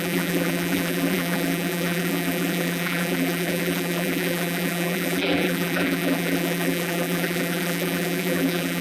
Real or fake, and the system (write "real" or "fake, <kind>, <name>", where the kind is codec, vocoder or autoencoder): fake, vocoder, BigVGAN v2